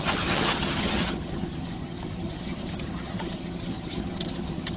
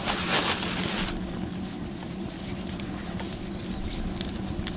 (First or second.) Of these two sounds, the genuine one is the second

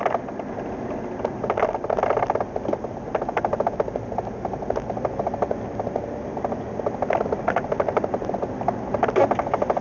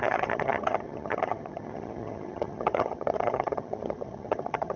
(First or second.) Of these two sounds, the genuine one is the first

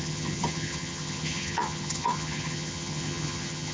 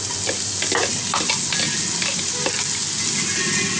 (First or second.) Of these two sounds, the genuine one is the second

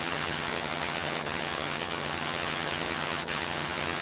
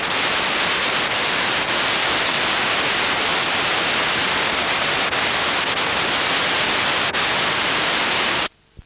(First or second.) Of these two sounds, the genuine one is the second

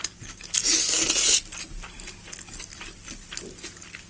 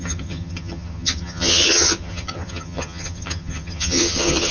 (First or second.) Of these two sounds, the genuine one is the first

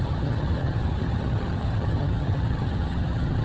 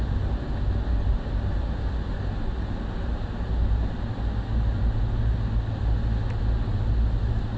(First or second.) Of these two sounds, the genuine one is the second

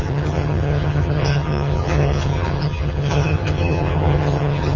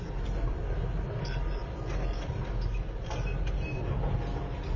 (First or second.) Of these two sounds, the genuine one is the second